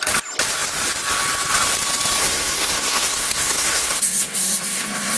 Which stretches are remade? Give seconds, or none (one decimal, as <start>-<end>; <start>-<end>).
2.2-5.2